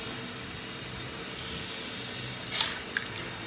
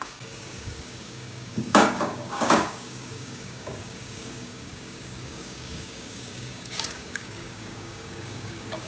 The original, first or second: first